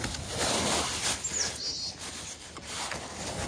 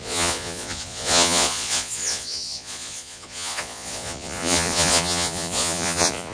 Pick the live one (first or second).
first